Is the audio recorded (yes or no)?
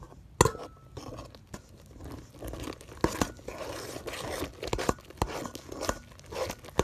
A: yes